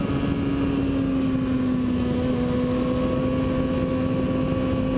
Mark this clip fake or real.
real